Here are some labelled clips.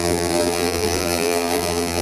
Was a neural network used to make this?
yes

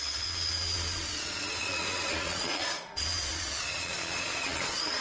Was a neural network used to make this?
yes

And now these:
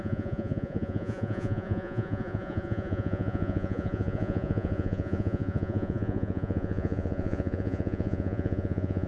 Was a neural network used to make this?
yes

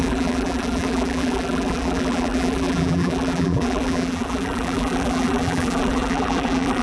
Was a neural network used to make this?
yes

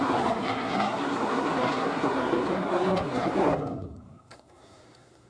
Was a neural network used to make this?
yes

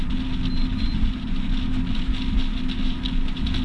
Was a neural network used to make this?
no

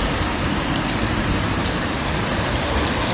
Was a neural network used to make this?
yes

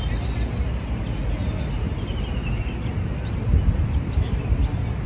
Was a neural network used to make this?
no